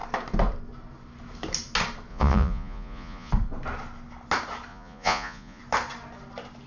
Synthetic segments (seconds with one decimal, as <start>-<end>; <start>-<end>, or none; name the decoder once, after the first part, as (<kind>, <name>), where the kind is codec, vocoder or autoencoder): 2.1-3.3 (vocoder, Vocos); 4.7-5.6